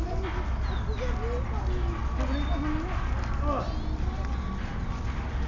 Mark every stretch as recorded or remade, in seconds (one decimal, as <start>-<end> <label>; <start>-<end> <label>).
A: 0.0-5.5 recorded